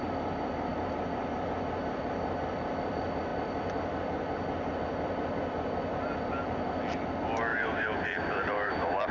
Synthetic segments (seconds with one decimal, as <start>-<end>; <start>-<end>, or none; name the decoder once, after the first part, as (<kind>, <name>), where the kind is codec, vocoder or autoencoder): 7.5-9.1 (vocoder, BigVGAN v2)